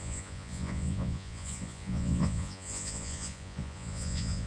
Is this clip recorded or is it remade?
remade